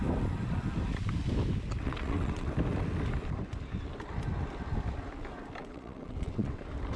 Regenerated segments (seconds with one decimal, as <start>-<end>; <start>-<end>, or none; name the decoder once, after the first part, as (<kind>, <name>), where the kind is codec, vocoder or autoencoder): 1.8-2.5 (vocoder, WaveNeXt); 5.6-6.6